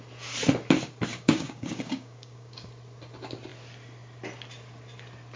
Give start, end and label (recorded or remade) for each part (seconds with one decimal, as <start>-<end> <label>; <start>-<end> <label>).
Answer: 0.0-1.1 recorded; 1.1-2.7 remade; 2.7-5.4 recorded